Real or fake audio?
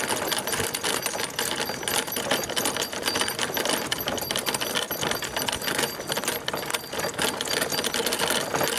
real